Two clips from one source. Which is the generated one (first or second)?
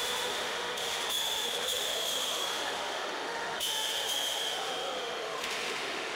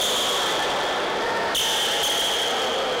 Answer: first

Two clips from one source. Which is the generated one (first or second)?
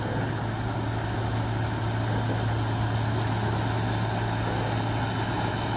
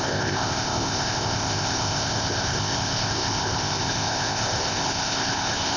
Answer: second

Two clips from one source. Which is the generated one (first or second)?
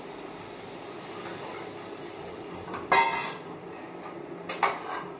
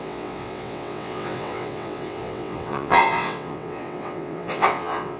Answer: second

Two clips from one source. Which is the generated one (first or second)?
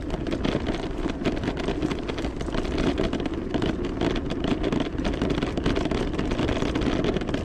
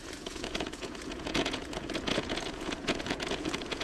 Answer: second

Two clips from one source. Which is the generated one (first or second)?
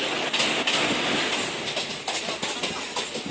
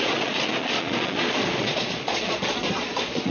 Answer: second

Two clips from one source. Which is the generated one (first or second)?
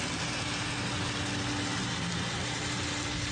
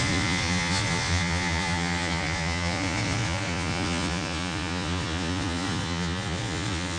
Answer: second